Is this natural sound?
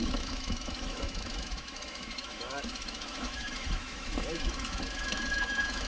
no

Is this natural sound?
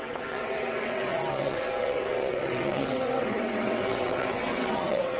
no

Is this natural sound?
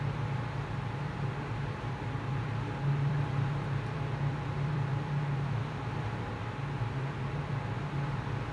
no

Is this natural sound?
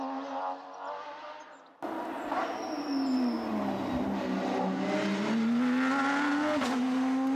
yes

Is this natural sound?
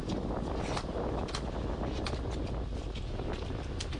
yes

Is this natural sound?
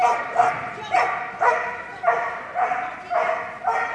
yes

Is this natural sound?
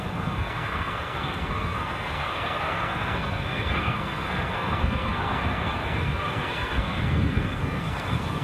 no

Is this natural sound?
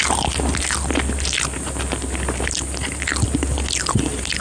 yes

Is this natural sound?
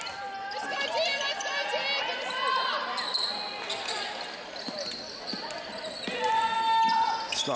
yes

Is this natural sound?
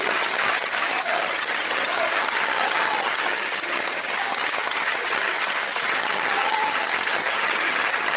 no